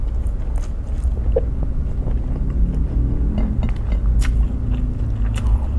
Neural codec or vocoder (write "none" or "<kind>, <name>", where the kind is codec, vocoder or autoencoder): none